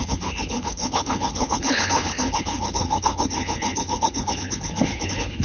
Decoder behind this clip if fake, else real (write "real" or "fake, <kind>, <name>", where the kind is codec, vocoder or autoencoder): fake, codec, HILCodec